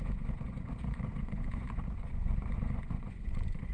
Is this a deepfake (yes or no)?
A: yes